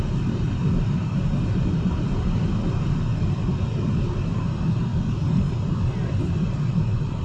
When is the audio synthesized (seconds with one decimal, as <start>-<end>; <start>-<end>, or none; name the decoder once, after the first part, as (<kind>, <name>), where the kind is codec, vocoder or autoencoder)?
none